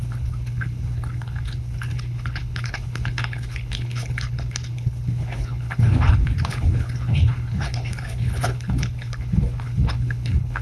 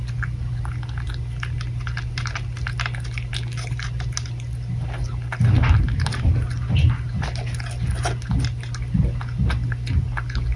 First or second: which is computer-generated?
first